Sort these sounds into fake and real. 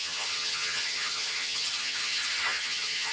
fake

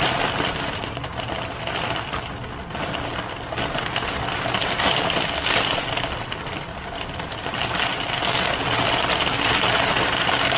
real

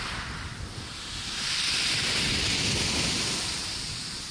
fake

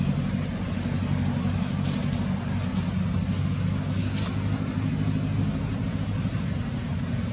real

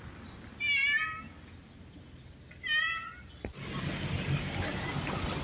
real